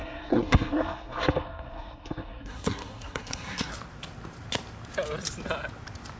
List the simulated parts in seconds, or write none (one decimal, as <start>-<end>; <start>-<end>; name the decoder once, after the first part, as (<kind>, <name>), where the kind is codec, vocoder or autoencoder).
0.0-3.7 (codec, SNAC)